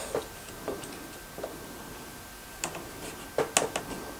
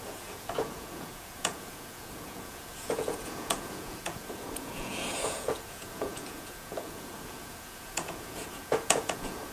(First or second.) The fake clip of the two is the second